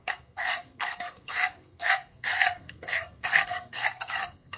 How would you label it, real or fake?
fake